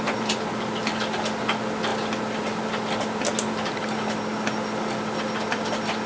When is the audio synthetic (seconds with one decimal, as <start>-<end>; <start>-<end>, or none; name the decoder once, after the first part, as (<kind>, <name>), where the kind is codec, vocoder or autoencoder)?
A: none